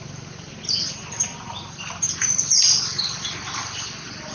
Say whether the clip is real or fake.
real